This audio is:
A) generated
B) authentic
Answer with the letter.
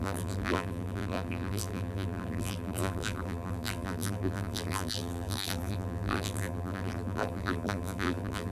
A